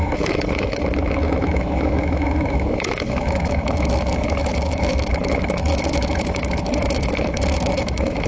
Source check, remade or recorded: remade